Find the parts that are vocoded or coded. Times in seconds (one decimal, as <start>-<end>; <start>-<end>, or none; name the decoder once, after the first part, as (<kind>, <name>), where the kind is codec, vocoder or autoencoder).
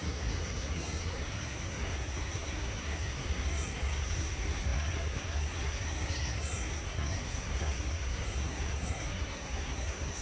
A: 0.0-10.2 (codec, SNAC)